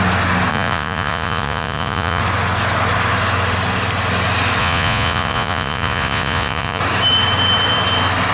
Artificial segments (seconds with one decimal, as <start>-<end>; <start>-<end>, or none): 0.5-2.2; 4.6-6.8